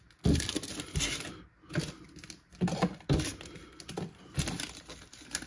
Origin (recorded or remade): recorded